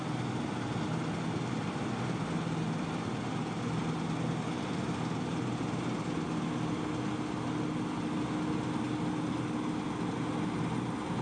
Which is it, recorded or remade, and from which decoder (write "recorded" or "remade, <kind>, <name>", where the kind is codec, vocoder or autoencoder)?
recorded